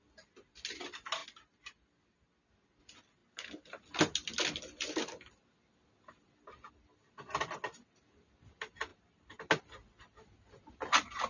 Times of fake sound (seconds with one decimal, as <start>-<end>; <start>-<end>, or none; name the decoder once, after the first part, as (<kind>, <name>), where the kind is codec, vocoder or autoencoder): none